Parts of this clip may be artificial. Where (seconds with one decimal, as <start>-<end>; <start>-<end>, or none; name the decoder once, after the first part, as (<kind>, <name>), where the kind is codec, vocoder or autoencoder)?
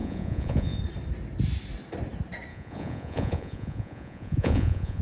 0.0-0.8 (vocoder, Vocos); 2.5-5.0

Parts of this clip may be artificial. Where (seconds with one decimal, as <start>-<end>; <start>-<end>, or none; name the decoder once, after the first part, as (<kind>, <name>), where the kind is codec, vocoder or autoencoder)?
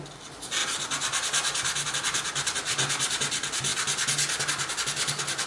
none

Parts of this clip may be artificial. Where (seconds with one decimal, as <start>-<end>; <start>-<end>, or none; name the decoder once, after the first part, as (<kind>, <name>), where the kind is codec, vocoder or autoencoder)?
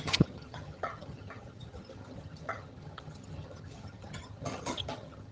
0.0-5.3 (vocoder, HiFi-GAN)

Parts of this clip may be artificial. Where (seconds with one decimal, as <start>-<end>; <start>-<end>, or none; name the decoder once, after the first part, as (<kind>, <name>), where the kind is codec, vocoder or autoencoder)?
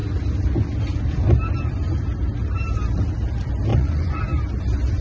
3.7-4.2 (vocoder, Vocos)